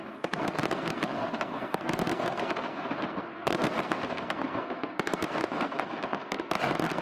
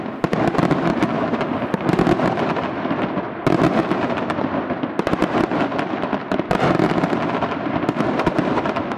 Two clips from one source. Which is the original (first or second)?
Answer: second